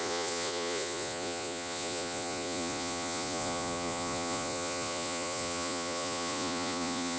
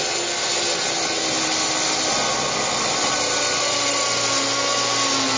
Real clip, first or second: second